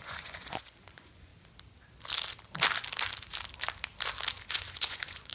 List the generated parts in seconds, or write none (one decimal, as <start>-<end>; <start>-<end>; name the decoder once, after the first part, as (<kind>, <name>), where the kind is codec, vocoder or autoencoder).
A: 0.0-1.3 (vocoder, Vocos); 4.5-5.3